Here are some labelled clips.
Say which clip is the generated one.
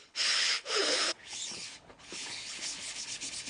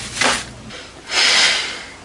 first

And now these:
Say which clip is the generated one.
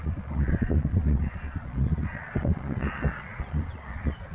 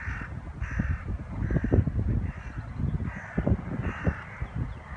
first